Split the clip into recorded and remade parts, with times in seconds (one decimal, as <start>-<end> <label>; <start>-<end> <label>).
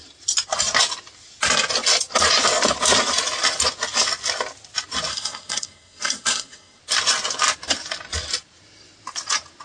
0.0-5.1 recorded; 5.1-6.8 remade; 6.8-9.6 recorded